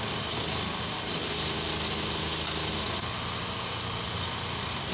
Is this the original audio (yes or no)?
yes